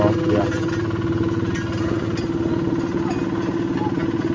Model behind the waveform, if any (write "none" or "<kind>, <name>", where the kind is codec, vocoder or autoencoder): none